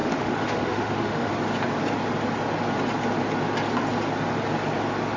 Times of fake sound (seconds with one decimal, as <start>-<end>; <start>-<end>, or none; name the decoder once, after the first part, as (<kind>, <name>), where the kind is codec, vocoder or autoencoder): 0.0-1.3 (autoencoder, DAC-VAE)